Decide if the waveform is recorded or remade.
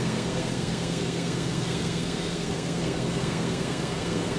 remade